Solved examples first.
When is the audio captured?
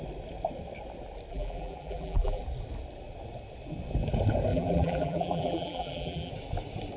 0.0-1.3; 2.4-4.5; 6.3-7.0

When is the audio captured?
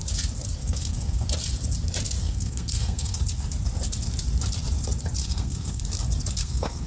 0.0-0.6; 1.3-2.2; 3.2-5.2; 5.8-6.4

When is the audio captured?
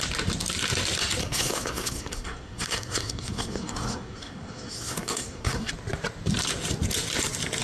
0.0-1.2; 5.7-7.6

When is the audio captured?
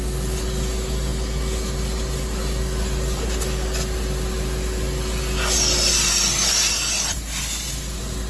0.0-8.3